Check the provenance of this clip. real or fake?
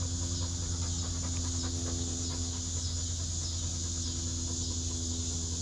real